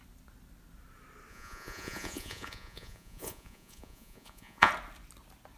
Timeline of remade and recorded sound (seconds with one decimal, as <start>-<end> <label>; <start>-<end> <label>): 0.0-1.3 recorded; 1.3-4.7 remade; 4.7-5.6 recorded